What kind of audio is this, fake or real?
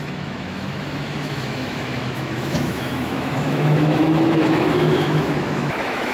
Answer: fake